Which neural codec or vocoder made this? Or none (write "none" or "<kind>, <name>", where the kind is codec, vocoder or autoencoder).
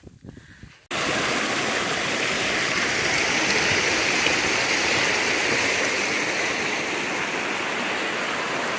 none